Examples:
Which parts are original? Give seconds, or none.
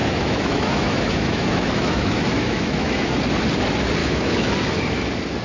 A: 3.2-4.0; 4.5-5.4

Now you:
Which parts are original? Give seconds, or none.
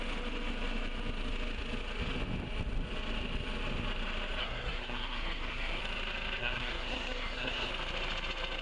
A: 0.0-4.4; 5.8-6.4; 7.7-8.6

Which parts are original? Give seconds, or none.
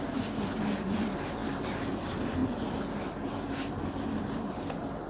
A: 1.4-2.0; 2.4-4.2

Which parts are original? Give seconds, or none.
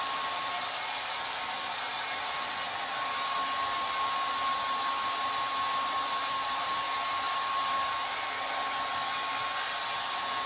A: 0.0-6.2; 6.8-10.5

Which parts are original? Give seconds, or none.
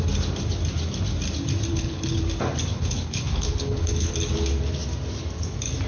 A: 0.0-1.7; 2.2-2.7; 4.1-5.9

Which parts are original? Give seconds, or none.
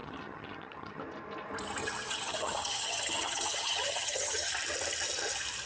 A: 1.0-1.8; 4.5-5.7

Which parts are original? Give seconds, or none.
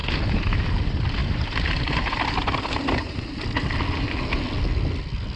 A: 0.0-1.2; 3.4-5.4